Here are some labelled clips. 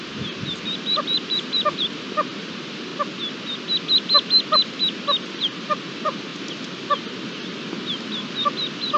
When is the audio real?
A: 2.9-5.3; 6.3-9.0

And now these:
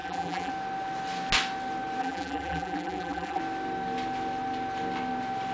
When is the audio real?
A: 0.5-2.0; 3.4-5.5

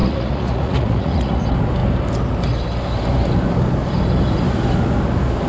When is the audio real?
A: 1.4-5.5

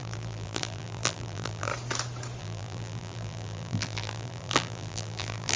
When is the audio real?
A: 1.7-2.4

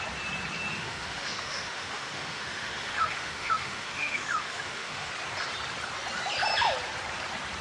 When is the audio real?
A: 0.0-0.7; 5.1-7.6